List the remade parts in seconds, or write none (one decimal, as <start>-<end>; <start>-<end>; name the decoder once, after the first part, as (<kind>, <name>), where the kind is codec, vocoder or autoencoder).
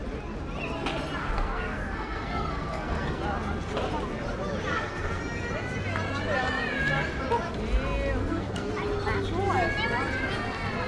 1.2-3.2 (codec, SNAC); 4.7-5.2; 8.2-8.7